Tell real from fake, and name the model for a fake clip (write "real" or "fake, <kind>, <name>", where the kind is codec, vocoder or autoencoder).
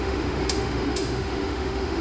fake, autoencoder, DAC-VAE